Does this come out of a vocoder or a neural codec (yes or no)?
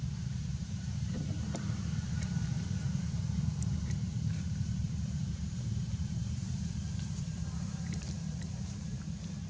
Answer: yes